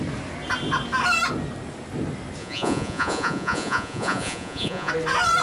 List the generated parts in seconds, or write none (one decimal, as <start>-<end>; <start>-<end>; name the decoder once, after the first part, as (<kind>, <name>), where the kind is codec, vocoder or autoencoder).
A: 2.4-4.9 (vocoder, Vocos)